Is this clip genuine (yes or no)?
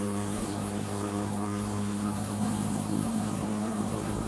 no